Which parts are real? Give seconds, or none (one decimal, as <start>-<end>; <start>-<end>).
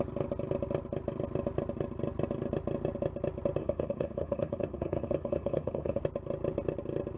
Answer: 0.0-3.6; 6.0-7.2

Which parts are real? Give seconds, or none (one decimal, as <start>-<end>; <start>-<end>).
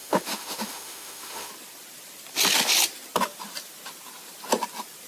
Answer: 1.5-5.1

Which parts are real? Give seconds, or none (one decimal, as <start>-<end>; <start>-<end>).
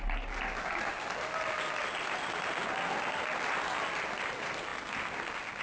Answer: 0.0-5.6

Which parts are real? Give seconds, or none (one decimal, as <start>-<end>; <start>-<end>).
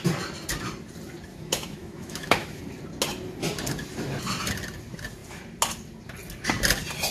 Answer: 0.0-1.3; 2.6-7.1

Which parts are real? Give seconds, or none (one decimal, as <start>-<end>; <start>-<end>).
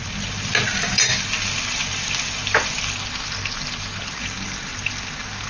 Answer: 0.0-5.5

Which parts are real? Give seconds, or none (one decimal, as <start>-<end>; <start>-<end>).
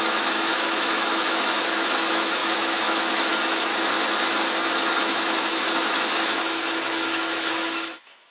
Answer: 3.7-5.0